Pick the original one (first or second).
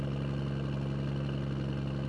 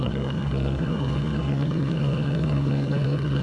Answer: first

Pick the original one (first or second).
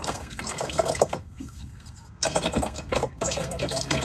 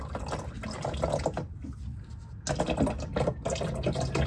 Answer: second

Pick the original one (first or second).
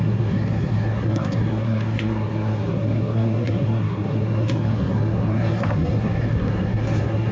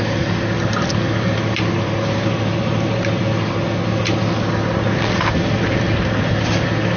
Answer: second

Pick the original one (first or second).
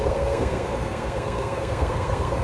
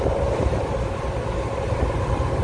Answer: second